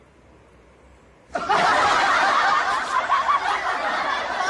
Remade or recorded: recorded